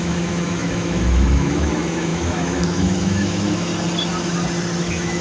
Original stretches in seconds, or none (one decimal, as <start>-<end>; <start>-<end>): 3.7-4.8